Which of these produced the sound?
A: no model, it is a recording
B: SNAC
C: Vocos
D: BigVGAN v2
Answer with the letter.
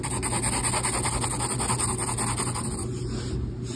A